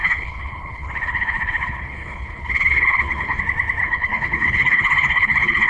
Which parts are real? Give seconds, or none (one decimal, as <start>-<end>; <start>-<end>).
3.4-3.8